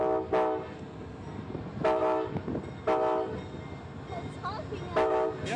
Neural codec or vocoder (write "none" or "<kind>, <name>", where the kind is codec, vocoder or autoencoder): none